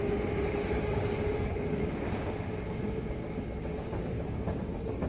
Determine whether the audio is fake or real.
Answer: fake